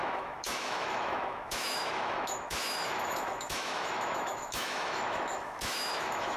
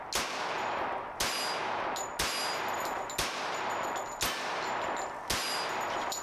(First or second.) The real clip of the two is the second